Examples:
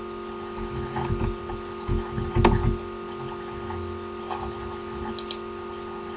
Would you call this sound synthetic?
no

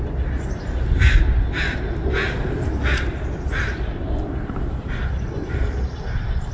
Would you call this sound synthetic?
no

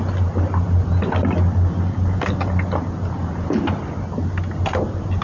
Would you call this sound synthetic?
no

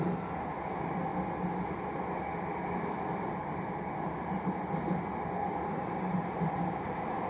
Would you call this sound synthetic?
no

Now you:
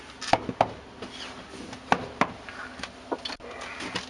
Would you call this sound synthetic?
no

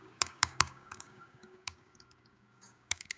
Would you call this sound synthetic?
yes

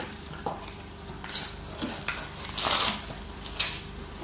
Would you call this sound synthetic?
no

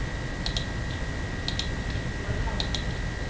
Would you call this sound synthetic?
no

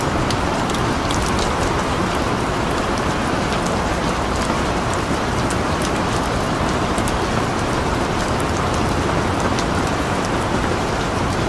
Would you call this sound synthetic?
no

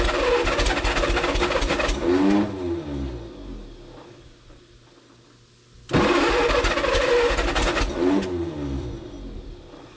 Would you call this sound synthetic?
no